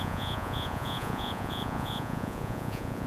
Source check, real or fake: fake